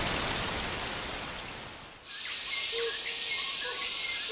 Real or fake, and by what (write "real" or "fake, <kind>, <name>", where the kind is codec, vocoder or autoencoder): real